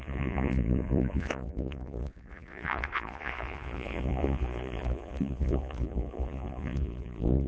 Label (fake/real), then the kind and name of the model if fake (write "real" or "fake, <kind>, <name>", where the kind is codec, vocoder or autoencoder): fake, vocoder, Vocos